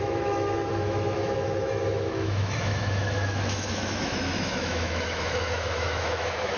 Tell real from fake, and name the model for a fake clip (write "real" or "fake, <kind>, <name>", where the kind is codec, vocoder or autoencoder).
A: fake, autoencoder, DAC-VAE